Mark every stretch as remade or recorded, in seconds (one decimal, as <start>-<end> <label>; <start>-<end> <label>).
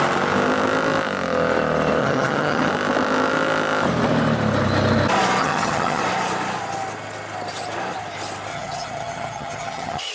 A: 0.0-2.0 recorded; 2.0-2.7 remade; 2.7-5.4 recorded; 5.4-6.0 remade; 6.0-8.5 recorded; 8.5-10.1 remade